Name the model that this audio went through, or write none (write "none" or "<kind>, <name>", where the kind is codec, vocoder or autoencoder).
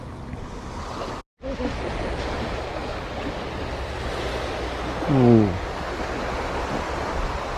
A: none